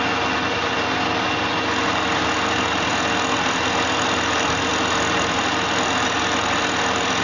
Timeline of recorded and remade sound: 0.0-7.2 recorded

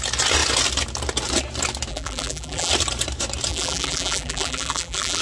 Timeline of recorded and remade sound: 0.0-1.9 recorded; 1.9-2.7 remade; 2.7-3.5 recorded; 3.5-5.2 remade

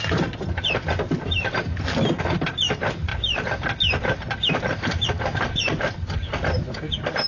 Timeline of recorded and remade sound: 0.0-3.1 recorded; 3.1-6.3 remade; 6.3-7.3 recorded

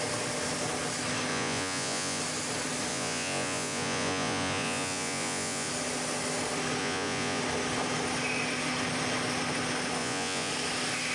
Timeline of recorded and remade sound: 0.0-1.3 recorded; 1.3-2.2 remade; 2.2-2.9 recorded; 2.9-5.7 remade; 5.7-6.8 recorded; 6.8-7.4 remade; 7.4-10.0 recorded; 10.0-10.5 remade; 10.5-11.1 recorded

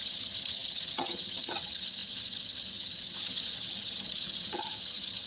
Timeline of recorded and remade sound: 0.0-5.3 remade

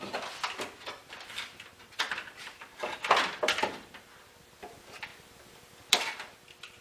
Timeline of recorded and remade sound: 0.0-6.8 remade

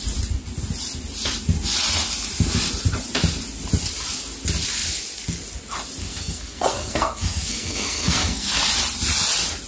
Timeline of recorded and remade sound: 0.0-6.0 recorded; 6.0-8.5 remade; 8.5-9.7 recorded